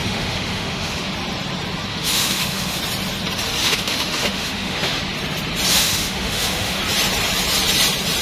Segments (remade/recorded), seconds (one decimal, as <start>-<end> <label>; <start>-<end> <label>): 0.0-1.1 remade; 1.1-1.9 recorded; 1.9-2.8 remade; 2.8-3.6 recorded; 3.6-5.0 remade; 5.0-5.7 recorded; 5.7-6.8 remade; 6.8-8.2 recorded